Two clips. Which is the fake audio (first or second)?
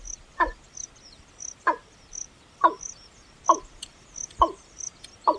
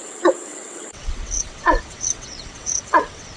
second